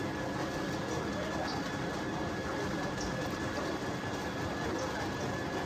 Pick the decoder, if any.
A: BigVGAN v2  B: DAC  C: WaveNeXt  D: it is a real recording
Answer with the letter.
D